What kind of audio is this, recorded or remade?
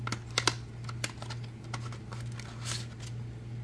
recorded